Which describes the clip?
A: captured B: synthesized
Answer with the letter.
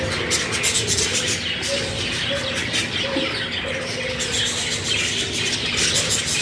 A